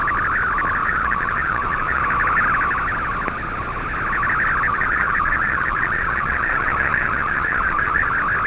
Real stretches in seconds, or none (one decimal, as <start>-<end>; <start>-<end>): 0.0-0.8; 2.0-4.7; 8.1-8.5